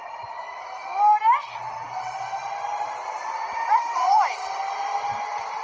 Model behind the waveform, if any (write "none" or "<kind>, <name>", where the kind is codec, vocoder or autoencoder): none